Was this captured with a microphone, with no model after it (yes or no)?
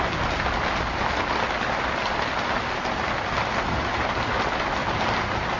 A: yes